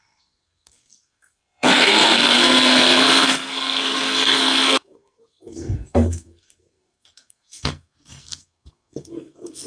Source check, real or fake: fake